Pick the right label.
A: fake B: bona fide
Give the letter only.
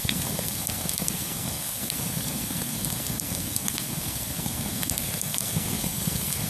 A